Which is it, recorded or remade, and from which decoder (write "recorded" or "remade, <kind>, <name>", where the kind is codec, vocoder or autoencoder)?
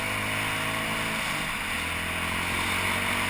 recorded